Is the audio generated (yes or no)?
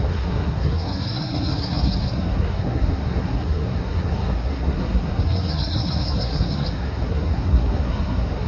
yes